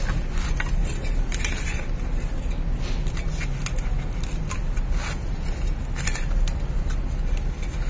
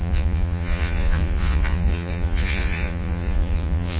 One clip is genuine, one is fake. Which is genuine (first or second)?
first